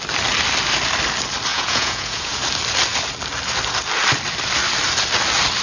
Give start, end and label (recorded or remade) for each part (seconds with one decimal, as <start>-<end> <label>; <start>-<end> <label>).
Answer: 0.0-1.5 recorded; 1.5-2.4 remade; 2.4-5.6 recorded